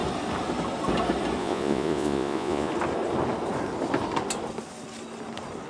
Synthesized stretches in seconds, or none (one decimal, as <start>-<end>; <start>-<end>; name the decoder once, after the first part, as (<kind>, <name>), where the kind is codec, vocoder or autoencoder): 1.4-2.7 (vocoder, Vocos)